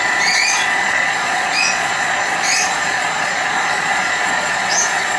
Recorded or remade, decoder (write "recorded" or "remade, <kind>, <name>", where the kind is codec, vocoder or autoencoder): remade, vocoder, Vocos